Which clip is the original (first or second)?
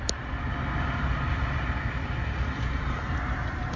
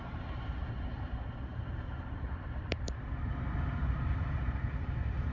first